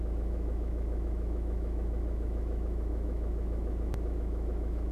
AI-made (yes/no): yes